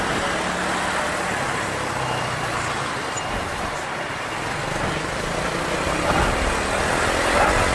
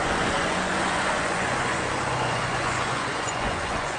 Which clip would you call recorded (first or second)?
first